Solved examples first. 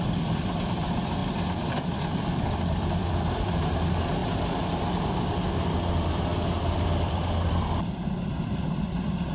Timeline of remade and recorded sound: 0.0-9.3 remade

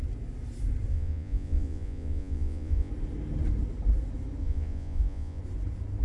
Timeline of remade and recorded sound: 0.0-0.9 recorded; 0.9-2.9 remade; 2.9-4.4 recorded; 4.4-5.4 remade; 5.4-6.0 recorded

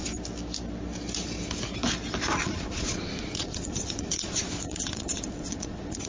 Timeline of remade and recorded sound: 0.0-2.4 recorded; 2.4-6.1 remade

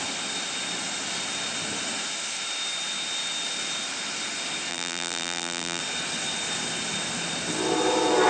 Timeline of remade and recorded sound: 0.0-4.7 recorded; 4.7-5.8 remade; 5.8-8.3 recorded

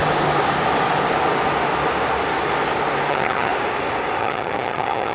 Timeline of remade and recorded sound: 0.0-3.1 recorded; 3.1-3.5 remade; 3.5-4.2 recorded; 4.2-5.1 remade

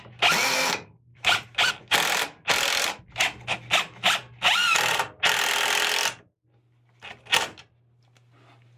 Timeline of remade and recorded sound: 0.0-1.1 recorded; 1.1-1.7 remade; 1.7-8.8 recorded

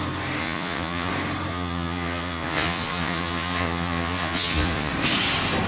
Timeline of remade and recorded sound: 0.0-0.4 recorded; 0.4-1.1 remade; 1.1-1.5 recorded; 1.5-4.9 remade; 4.9-5.7 recorded